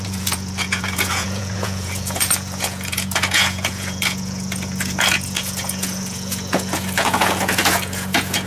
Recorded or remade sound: remade